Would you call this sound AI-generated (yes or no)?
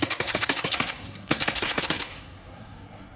yes